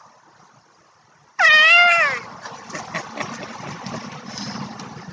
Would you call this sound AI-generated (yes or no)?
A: no